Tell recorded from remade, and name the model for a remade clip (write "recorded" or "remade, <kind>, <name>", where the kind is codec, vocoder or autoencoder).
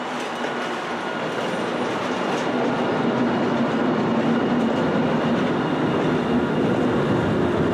recorded